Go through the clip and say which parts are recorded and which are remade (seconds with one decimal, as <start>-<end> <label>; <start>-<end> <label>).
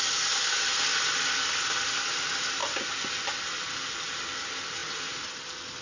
0.0-5.8 recorded